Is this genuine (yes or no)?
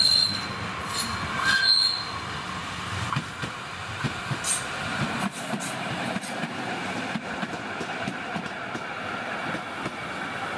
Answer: yes